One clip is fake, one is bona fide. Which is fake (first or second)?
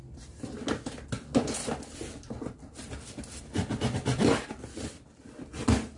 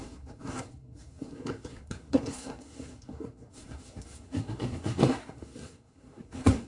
second